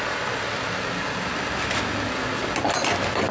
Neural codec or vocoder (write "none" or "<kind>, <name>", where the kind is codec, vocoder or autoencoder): none